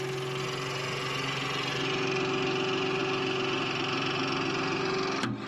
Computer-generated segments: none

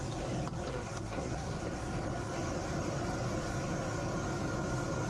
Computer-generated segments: 0.7-1.6 (codec, SNAC)

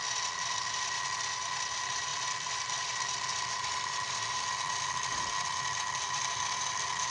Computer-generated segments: none

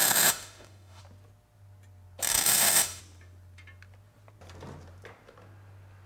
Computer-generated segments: 0.0-1.0 (autoencoder, DAC-VAE); 2.3-3.0